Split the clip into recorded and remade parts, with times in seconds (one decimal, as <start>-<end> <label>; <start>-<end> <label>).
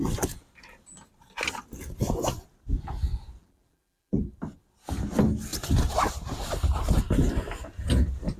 0.0-3.4 recorded; 3.4-4.4 remade; 4.4-8.4 recorded